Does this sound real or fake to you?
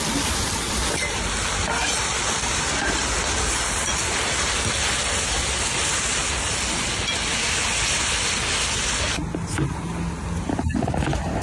real